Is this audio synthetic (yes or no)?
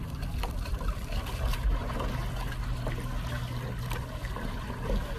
no